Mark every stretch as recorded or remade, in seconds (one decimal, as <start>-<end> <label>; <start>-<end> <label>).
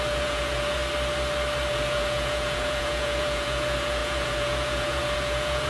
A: 0.0-0.8 remade; 0.8-1.7 recorded; 1.7-5.7 remade